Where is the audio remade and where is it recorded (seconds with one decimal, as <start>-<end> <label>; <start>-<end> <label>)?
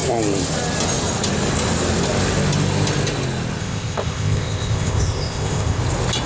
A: 0.0-3.6 recorded; 3.6-5.8 remade; 5.8-6.3 recorded